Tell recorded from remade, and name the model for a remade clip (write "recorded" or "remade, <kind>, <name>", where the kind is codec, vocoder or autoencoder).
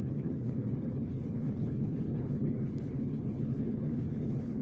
remade, codec, HILCodec